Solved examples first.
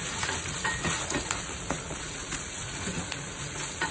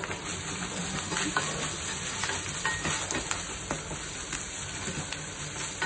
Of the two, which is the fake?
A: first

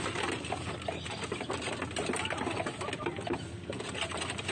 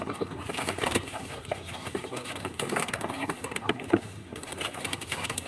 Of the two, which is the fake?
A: second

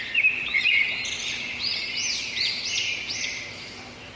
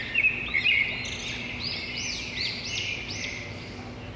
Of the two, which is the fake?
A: first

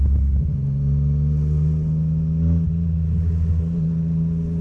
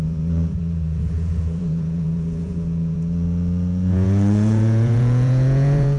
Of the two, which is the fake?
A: second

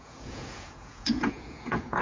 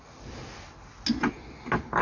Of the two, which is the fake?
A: first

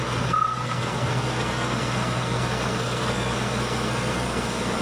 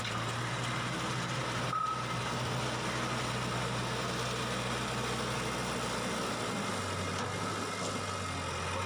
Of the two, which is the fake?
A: first